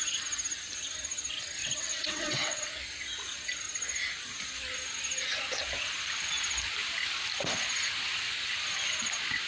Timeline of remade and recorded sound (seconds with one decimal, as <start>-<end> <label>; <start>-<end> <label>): 0.0-1.6 recorded; 1.6-2.6 remade; 2.6-9.5 recorded